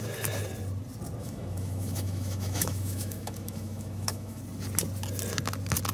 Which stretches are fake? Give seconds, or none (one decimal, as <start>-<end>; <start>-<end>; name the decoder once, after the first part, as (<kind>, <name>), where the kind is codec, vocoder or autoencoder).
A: 1.2-4.4 (autoencoder, DAC-VAE)